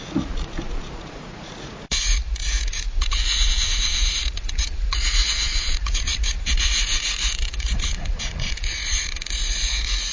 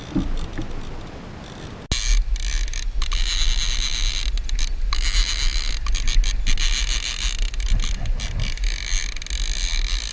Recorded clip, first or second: second